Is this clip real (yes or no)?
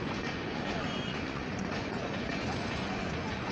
no